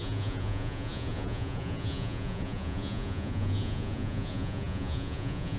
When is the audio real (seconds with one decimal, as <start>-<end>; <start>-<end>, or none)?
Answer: none